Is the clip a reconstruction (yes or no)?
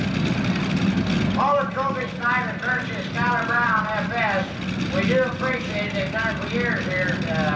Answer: no